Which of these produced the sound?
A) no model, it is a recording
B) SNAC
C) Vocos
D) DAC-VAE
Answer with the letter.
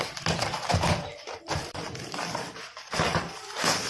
A